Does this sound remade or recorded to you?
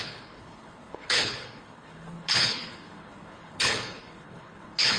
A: remade